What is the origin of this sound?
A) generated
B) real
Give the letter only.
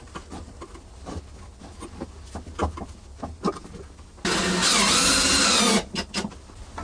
B